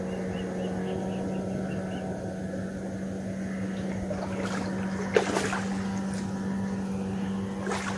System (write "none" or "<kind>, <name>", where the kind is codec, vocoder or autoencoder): none